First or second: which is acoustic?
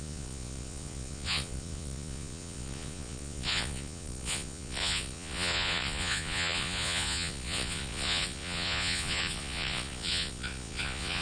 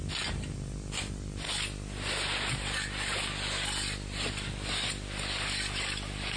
second